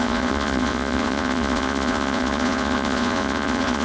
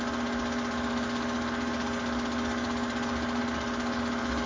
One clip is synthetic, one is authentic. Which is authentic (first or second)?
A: second